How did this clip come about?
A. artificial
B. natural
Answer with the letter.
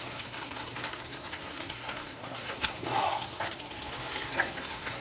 A